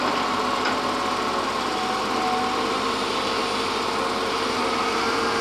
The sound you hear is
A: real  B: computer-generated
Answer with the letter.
A